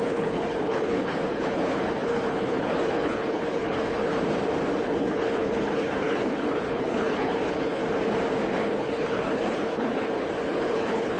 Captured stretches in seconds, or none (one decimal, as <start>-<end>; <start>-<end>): 4.0-4.8; 7.8-8.6